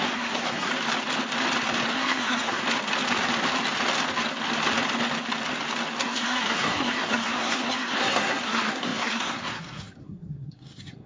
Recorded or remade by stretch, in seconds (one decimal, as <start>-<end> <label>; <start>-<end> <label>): 0.0-0.7 remade; 0.7-1.9 recorded; 1.9-2.6 remade; 2.6-6.0 recorded; 6.0-11.1 remade